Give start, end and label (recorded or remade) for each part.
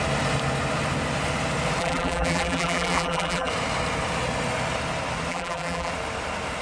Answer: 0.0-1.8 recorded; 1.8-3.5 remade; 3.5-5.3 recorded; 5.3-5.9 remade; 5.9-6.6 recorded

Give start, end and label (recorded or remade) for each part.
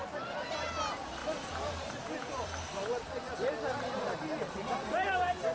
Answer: 0.0-1.2 recorded; 1.2-4.0 remade; 4.0-5.5 recorded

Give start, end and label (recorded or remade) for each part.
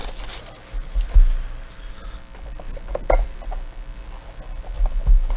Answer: 0.0-5.4 recorded